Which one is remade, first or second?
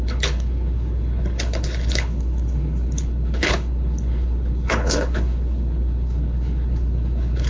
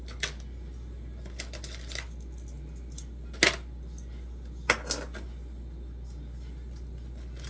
first